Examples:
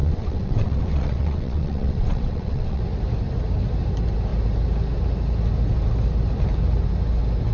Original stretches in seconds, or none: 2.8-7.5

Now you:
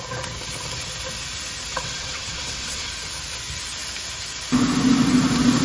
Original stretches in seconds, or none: 0.0-1.7; 2.9-5.6

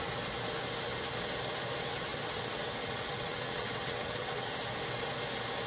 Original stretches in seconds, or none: 0.0-2.1; 4.5-5.7